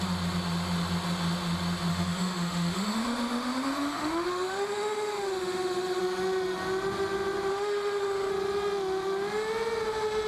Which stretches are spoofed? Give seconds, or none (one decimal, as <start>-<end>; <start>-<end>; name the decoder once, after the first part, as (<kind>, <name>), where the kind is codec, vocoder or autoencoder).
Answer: 1.9-6.0 (autoencoder, DAC-VAE); 7.5-8.3